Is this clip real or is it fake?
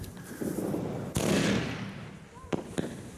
real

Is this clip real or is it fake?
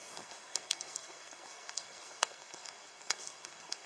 fake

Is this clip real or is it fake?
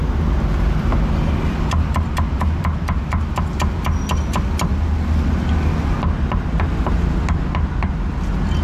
real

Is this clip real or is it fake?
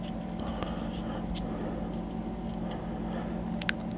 real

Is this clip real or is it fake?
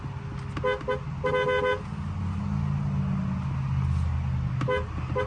real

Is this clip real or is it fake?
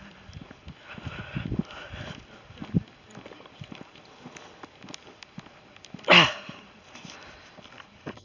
real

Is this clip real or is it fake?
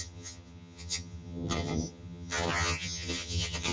fake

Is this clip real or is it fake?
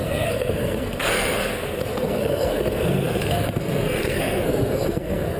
fake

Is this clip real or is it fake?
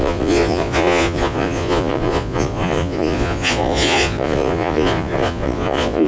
fake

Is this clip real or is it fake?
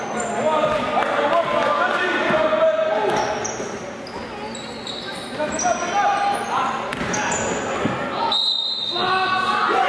real